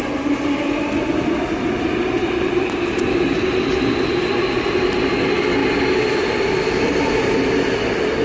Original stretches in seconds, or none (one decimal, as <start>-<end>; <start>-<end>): 0.0-8.2